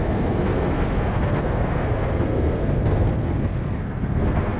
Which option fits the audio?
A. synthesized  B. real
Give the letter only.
A